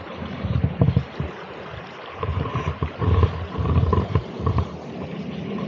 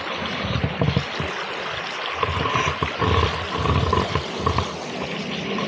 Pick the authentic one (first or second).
second